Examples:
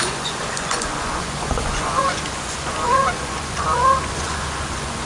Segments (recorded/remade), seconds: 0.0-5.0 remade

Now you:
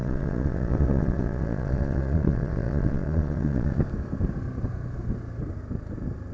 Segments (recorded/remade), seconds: 0.0-3.8 remade; 3.8-6.3 recorded

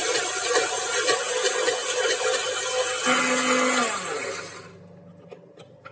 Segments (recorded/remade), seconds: 0.0-5.9 recorded